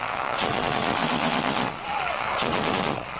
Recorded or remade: remade